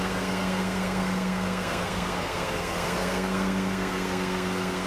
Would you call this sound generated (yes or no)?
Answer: yes